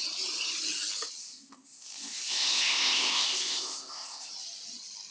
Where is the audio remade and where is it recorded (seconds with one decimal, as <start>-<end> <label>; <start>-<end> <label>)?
0.0-1.2 recorded; 1.2-4.3 remade; 4.3-5.1 recorded